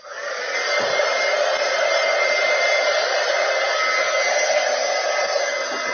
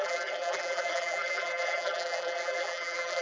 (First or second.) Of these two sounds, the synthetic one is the second